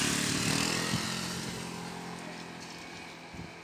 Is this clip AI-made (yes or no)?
no